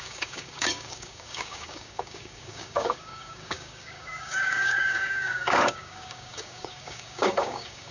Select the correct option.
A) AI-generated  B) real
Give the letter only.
A